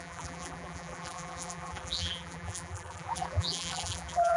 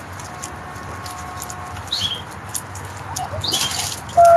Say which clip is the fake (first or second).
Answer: first